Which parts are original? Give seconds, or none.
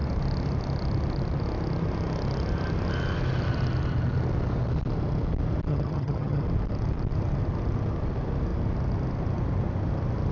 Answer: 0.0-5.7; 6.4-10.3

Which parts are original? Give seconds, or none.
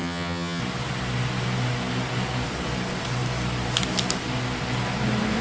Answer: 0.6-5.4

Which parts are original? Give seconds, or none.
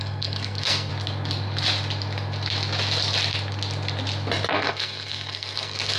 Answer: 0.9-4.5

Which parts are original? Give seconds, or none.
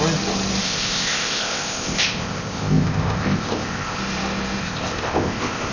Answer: 0.0-0.6; 4.0-4.6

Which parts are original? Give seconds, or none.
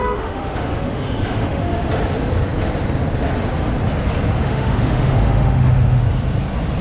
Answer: 1.8-4.4; 6.0-6.8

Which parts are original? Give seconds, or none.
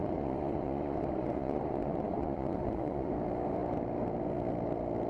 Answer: 3.1-5.1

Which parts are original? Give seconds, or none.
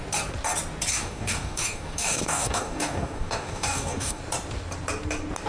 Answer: 0.0-0.9; 4.2-5.5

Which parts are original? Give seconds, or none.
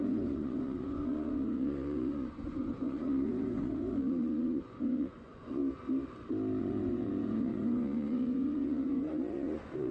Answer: 5.6-6.6